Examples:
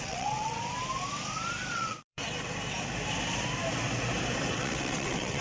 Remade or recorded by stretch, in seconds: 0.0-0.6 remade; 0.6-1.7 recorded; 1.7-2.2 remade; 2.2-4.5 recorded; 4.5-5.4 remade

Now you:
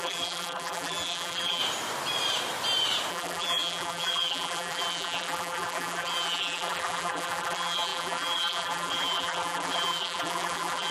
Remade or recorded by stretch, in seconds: 0.0-1.6 remade; 1.6-3.1 recorded; 3.1-10.9 remade

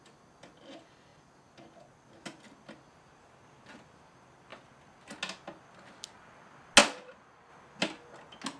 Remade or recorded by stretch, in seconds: 0.0-8.6 recorded

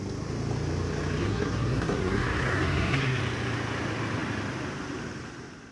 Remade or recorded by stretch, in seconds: 0.0-1.2 recorded; 1.2-3.2 remade; 3.2-5.7 recorded

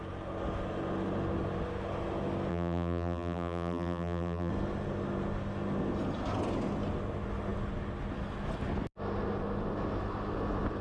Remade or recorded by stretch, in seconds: 0.0-2.5 recorded; 2.5-4.5 remade; 4.5-10.8 recorded

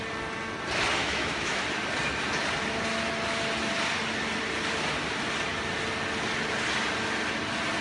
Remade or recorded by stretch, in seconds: 0.0-1.0 recorded; 1.0-1.6 remade; 1.6-7.8 recorded

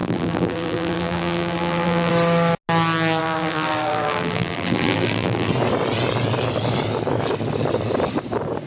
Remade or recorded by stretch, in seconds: 0.0-2.1 remade; 2.1-3.2 recorded; 3.2-5.5 remade; 5.5-8.7 recorded

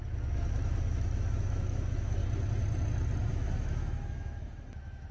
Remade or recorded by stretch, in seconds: 0.0-2.2 remade; 2.2-3.3 recorded; 3.3-5.1 remade